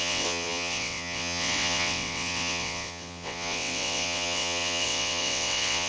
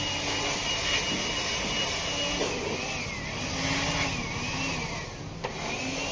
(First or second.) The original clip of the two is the second